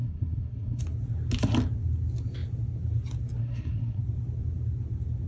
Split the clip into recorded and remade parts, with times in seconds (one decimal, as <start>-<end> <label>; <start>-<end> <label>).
0.0-0.8 remade; 0.8-3.4 recorded; 3.4-4.0 remade; 4.0-5.3 recorded